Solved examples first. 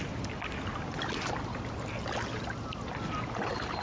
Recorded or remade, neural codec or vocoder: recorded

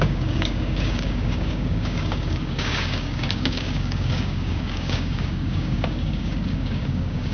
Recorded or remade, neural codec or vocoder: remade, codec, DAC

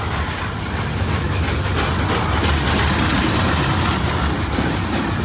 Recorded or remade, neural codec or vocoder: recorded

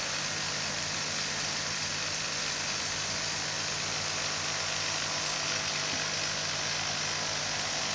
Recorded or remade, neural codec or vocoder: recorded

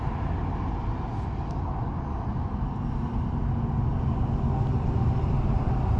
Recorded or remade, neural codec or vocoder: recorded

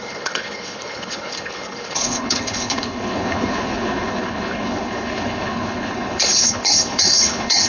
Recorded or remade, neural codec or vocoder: remade, codec, HILCodec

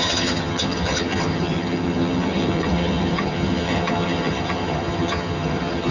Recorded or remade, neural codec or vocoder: remade, vocoder, HiFi-GAN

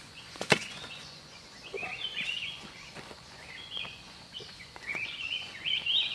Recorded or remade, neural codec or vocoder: remade, vocoder, Vocos